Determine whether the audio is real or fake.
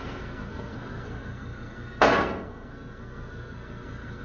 fake